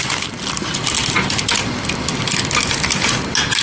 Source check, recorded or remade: recorded